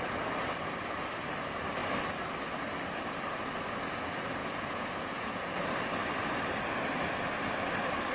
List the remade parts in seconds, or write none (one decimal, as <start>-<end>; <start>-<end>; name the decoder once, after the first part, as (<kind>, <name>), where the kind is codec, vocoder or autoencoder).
4.4-5.5 (vocoder, Vocos)